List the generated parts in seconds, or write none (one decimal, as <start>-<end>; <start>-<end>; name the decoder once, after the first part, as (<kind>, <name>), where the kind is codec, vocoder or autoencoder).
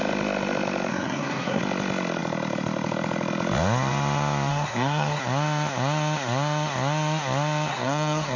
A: 0.9-1.6 (codec, SNAC); 4.5-5.2; 7.7-8.4